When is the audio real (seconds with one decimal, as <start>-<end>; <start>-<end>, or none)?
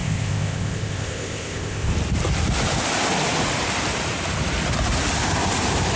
1.9-6.0